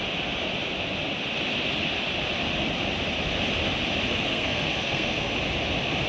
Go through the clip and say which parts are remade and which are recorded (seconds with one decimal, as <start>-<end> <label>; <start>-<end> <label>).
0.0-4.1 recorded; 4.1-5.3 remade; 5.3-6.1 recorded